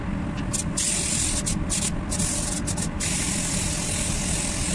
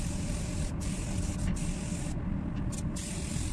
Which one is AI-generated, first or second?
second